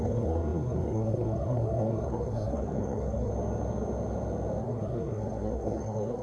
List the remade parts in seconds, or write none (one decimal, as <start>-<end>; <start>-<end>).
0.0-3.3; 4.6-6.2